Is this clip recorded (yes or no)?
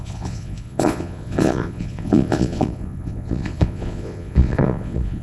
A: no